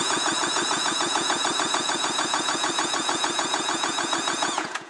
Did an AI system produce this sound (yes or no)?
yes